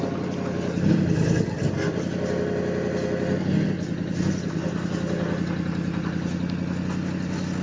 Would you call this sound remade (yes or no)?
no